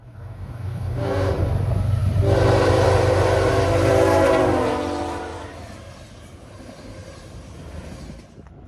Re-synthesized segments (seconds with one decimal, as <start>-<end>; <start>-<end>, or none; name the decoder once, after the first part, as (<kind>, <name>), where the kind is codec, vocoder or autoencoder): 0.0-1.3 (codec, DAC)